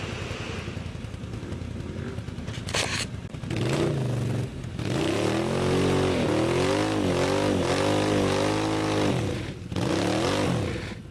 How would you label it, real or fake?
real